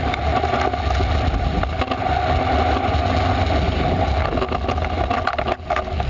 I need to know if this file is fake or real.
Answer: real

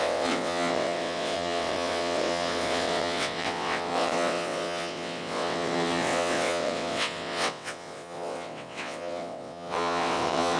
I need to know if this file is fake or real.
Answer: fake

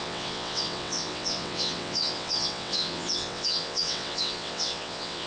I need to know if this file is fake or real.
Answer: fake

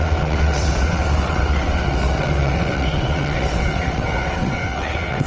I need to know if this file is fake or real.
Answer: fake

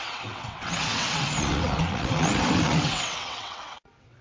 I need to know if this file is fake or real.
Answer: fake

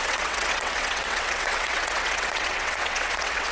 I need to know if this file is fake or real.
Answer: fake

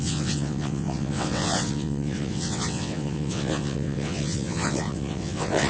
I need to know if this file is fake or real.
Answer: fake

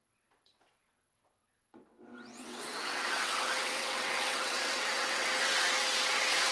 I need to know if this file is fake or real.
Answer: fake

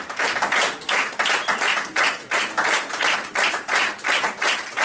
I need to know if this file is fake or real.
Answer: real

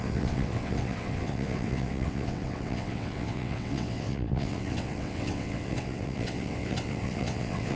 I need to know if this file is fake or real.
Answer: fake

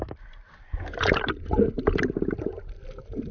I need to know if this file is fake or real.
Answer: real